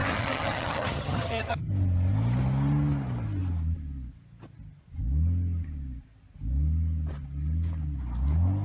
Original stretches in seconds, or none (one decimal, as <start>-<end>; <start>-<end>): 1.7-8.6

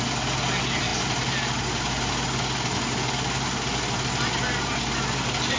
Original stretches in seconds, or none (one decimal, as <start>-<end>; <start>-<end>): 0.0-5.6

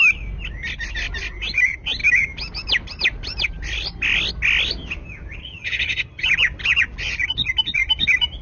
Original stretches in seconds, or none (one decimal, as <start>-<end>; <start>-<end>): 0.0-5.4; 6.3-8.4